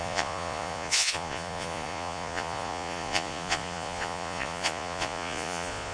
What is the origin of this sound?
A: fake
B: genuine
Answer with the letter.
A